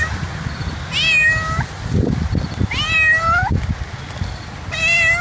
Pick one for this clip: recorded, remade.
recorded